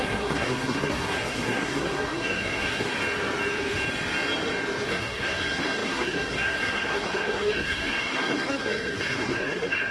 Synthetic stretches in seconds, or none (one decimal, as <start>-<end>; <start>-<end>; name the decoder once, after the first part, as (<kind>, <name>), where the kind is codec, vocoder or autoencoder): 0.0-2.9 (codec, SNAC); 4.9-9.9